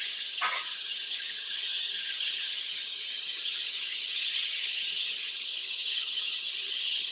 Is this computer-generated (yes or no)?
yes